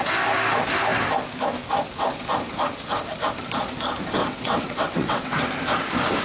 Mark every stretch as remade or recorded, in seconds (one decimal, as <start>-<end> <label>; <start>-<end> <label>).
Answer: 0.0-4.2 recorded; 4.2-5.4 remade; 5.4-6.2 recorded